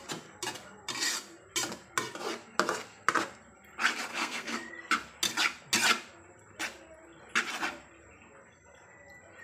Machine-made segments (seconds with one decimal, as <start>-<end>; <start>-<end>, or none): 4.1-4.7